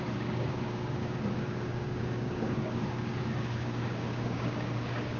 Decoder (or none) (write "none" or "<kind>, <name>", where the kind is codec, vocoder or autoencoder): codec, DAC